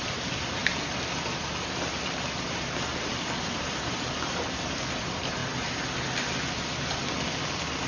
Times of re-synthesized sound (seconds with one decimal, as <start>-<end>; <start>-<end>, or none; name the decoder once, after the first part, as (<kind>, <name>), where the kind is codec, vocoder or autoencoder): 0.0-0.6 (vocoder, BigVGAN v2); 2.4-2.9; 3.4-5.4; 7.4-7.9